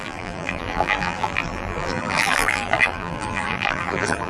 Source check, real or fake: fake